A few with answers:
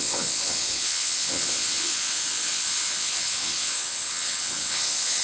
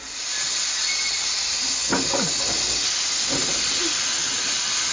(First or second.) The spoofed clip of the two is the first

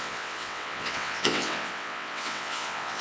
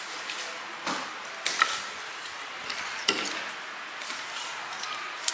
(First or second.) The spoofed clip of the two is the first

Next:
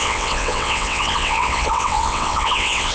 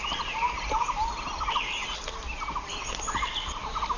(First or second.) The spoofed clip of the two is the first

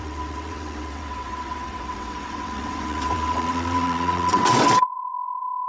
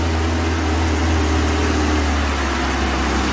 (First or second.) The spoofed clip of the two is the first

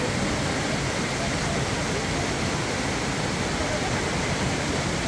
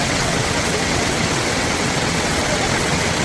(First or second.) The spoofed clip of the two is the second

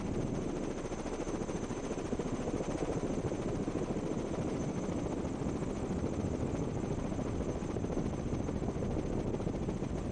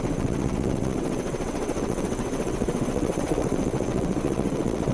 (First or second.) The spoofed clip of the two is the second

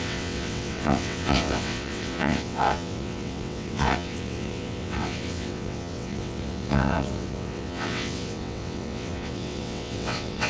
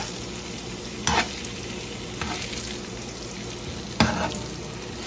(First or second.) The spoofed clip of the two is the first